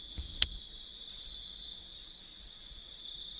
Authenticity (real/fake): real